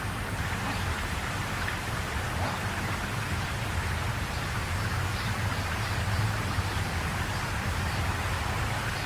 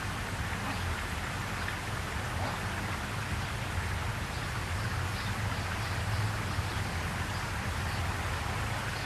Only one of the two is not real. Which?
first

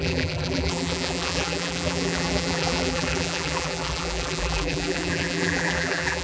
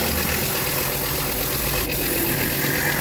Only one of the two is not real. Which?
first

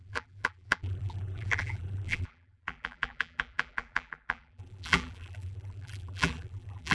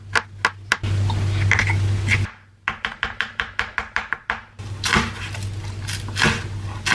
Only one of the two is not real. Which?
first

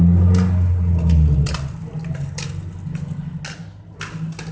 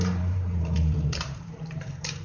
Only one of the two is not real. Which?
second